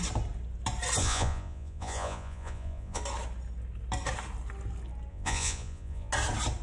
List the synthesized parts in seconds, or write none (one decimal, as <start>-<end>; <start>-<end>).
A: 1.0-3.0; 5.1-6.1